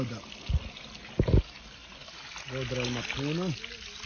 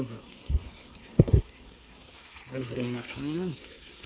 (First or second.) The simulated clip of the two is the second